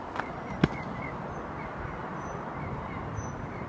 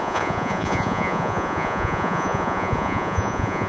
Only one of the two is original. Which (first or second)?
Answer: first